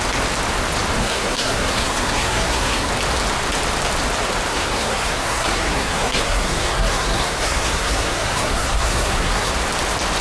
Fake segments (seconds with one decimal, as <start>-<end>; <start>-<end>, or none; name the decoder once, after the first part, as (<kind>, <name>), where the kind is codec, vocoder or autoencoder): 1.0-2.9 (codec, SNAC); 4.5-9.5